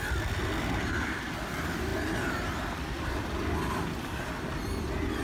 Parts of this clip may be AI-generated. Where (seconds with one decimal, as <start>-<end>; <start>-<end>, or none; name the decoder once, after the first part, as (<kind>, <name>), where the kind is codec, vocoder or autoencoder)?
none